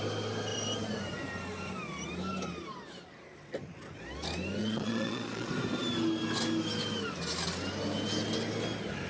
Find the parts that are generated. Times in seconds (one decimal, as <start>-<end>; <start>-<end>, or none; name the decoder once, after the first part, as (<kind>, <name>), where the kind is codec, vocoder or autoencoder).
4.6-5.5 (vocoder, Vocos)